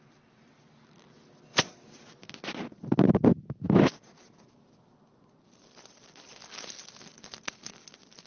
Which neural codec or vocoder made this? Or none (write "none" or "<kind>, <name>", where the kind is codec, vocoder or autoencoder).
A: none